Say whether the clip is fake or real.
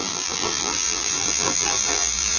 fake